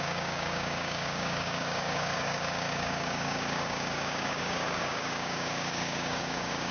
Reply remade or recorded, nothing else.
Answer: remade